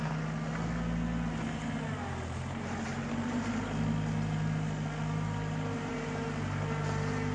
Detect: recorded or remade recorded